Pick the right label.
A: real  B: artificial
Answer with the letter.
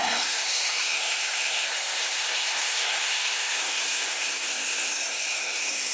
B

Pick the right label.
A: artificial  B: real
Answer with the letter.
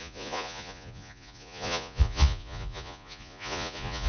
A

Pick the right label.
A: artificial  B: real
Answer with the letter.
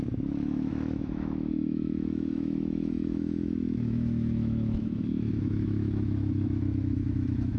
A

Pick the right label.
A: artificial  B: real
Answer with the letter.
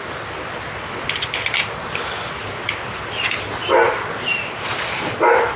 B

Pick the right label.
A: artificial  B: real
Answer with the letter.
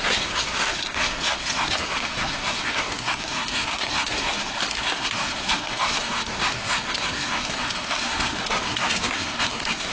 A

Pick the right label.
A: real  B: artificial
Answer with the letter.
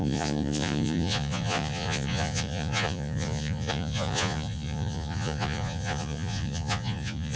B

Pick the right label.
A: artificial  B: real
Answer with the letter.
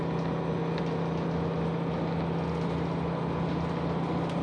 B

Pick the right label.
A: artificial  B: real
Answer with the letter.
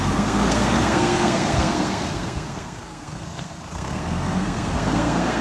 A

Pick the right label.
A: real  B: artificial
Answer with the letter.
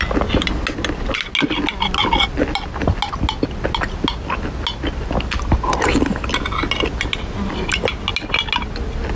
A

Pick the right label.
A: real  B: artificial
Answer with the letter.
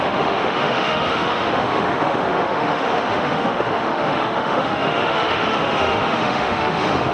B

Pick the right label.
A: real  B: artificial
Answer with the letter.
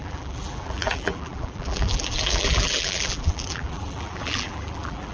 B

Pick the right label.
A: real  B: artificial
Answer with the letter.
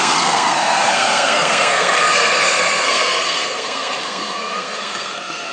B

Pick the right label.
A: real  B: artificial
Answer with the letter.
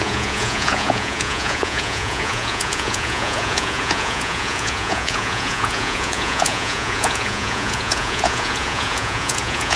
B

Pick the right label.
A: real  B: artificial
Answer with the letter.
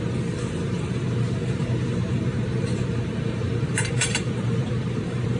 B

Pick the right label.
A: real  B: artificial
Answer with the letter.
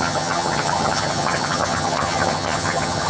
B